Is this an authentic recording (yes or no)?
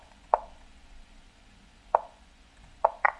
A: no